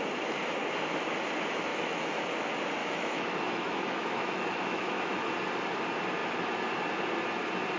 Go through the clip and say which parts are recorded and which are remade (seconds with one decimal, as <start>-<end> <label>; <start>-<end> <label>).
0.0-1.7 recorded; 1.7-2.3 remade; 2.3-2.8 recorded; 2.8-5.3 remade; 5.3-7.8 recorded